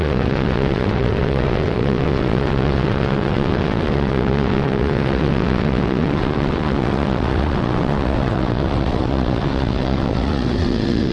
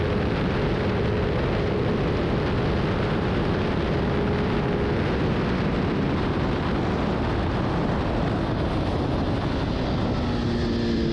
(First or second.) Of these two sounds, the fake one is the first